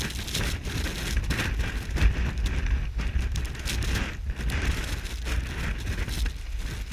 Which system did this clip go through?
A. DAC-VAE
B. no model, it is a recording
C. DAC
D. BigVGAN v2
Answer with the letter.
B